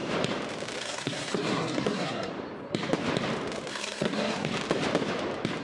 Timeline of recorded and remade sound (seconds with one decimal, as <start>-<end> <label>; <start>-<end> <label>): 0.0-0.8 recorded; 0.8-2.3 remade; 2.3-3.7 recorded; 3.7-4.5 remade; 4.5-5.6 recorded